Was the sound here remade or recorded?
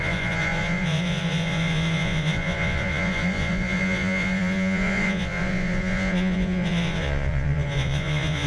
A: remade